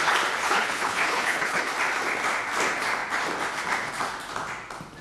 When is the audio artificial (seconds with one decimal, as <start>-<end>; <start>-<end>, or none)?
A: 0.4-1.6